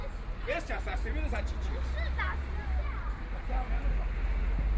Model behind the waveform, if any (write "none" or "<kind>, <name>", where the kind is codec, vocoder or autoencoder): none